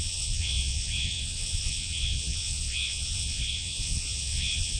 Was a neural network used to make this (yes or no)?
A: yes